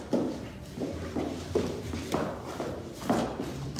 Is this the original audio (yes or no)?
no